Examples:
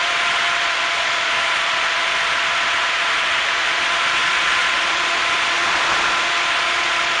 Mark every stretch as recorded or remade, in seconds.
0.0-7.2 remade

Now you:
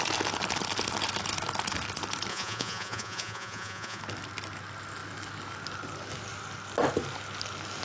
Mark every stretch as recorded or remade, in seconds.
0.0-2.3 recorded; 2.3-4.0 remade; 4.0-7.8 recorded